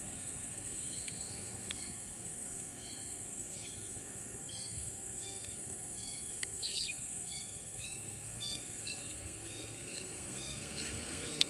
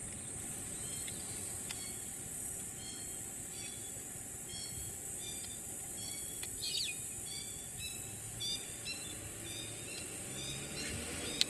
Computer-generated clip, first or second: first